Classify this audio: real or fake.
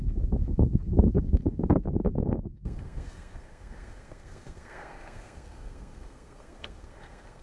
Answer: fake